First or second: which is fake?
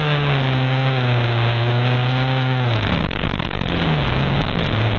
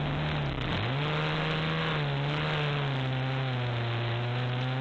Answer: first